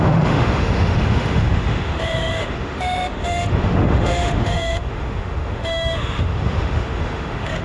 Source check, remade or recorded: remade